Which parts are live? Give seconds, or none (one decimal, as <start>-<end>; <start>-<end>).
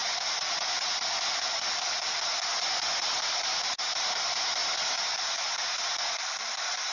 2.2-6.9